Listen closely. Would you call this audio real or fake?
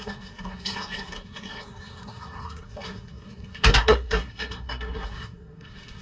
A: fake